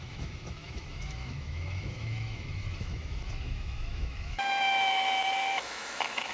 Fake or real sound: fake